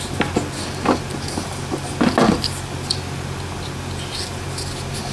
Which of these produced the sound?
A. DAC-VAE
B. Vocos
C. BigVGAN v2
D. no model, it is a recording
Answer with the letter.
D